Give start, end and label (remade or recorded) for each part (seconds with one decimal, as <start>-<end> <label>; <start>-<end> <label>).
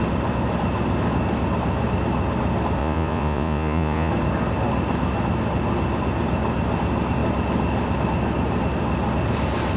0.0-2.8 recorded; 2.8-4.1 remade; 4.1-9.8 recorded